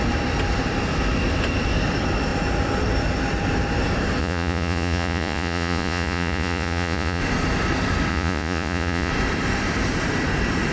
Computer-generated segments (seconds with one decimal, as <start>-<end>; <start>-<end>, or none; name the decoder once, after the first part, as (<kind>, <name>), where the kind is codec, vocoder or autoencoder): 4.2-7.2 (vocoder, Vocos); 8.1-9.1